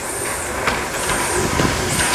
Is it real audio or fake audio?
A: real